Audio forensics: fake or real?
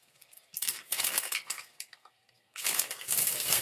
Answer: fake